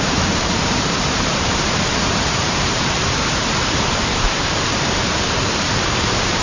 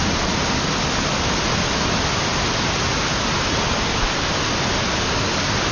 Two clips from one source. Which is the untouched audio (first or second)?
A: second